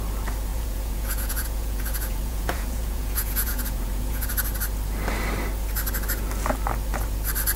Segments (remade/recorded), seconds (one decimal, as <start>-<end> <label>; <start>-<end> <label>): 0.0-0.5 recorded; 0.5-4.3 remade; 4.3-7.6 recorded